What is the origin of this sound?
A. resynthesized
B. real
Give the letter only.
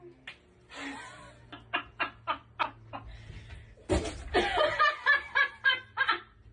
B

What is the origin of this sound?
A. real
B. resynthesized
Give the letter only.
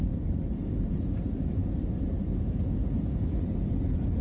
A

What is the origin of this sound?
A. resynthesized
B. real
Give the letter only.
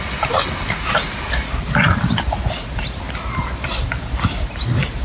B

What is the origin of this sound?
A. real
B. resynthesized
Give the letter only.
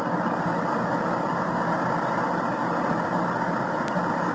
A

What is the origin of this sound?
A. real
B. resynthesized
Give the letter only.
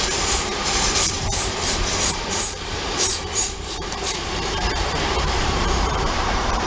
B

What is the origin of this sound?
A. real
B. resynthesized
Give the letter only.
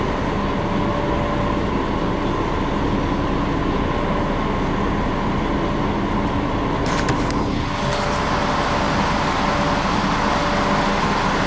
A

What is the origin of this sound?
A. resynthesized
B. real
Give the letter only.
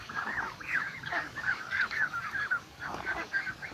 A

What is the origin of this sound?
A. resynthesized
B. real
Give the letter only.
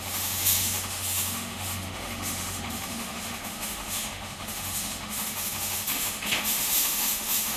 A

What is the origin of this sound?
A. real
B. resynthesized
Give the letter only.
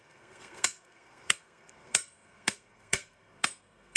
B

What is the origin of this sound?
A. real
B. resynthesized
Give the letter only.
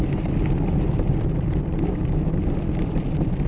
A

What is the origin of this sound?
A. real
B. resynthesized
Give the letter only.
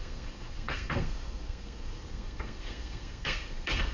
B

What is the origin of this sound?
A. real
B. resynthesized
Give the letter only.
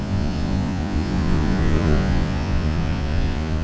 B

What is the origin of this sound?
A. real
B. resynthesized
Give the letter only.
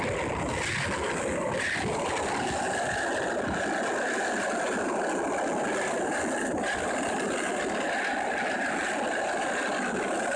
A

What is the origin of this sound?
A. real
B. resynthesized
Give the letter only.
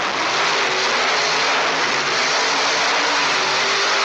A